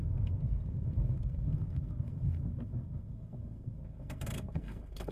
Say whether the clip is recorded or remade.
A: remade